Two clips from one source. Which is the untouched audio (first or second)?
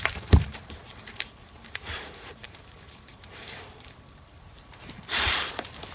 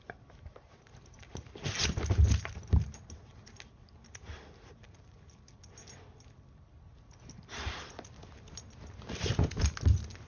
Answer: second